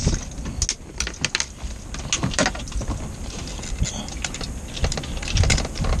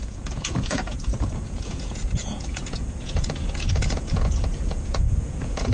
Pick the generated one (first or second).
second